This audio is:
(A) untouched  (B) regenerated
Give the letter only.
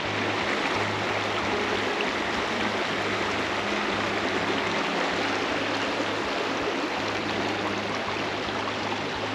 A